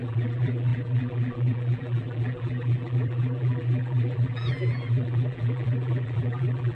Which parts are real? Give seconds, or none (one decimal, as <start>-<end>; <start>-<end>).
none